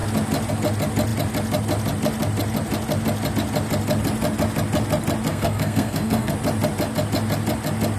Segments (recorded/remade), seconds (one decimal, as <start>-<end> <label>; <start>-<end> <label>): 0.0-5.3 recorded; 5.3-6.3 remade; 6.3-8.0 recorded